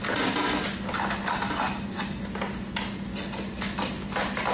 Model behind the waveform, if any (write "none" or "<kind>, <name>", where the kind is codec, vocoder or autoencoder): none